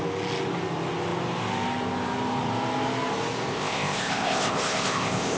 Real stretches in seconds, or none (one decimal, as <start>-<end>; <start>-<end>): 0.0-3.5